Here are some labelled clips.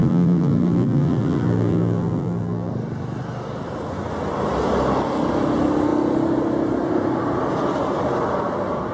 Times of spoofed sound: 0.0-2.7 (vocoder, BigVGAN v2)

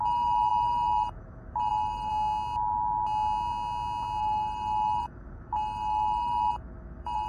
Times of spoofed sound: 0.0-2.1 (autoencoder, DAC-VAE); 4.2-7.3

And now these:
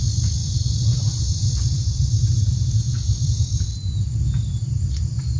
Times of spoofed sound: 0.4-3.6 (vocoder, BigVGAN v2); 4.6-5.4

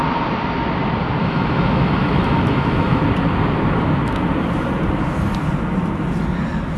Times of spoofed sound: 1.2-3.0 (autoencoder, DAC-VAE)